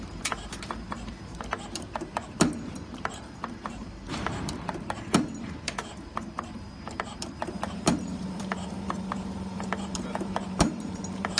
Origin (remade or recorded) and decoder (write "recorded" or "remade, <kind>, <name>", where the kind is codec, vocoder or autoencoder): remade, vocoder, BigVGAN v2